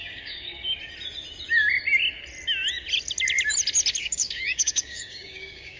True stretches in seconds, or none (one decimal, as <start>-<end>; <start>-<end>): 0.6-4.0